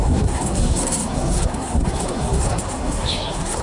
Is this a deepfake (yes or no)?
yes